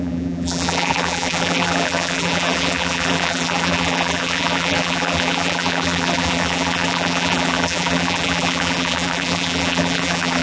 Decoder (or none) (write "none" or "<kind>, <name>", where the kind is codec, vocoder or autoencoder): vocoder, BigVGAN v2